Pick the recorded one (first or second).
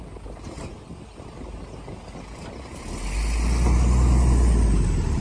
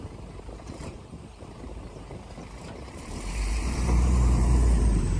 first